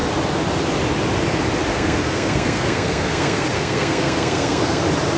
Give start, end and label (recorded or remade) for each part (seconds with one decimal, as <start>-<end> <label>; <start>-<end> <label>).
0.0-1.7 recorded; 1.7-4.8 remade; 4.8-5.2 recorded